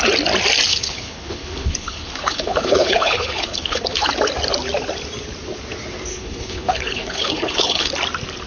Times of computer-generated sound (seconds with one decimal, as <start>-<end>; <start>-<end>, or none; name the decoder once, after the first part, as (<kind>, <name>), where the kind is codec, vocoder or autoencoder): 0.7-4.1 (codec, HILCodec); 6.1-7.9